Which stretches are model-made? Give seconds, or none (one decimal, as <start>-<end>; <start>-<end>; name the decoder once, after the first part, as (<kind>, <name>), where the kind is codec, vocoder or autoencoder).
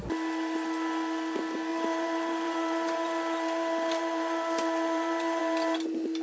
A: 1.7-5.4 (vocoder, BigVGAN v2)